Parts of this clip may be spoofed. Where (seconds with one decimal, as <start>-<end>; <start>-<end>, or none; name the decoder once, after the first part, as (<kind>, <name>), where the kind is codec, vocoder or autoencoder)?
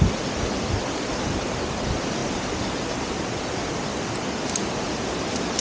none